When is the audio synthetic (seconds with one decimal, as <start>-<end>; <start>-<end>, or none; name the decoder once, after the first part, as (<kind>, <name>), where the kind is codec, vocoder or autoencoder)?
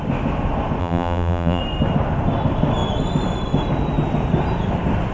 0.8-1.6 (vocoder, BigVGAN v2)